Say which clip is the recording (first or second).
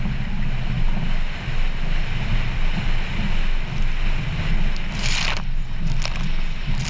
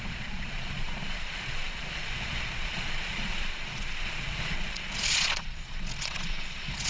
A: first